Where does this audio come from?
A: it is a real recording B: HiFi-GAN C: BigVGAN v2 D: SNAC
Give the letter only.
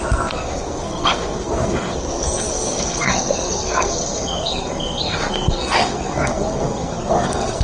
D